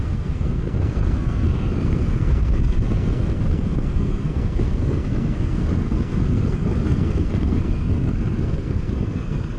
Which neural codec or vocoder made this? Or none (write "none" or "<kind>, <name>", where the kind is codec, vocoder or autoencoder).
codec, SNAC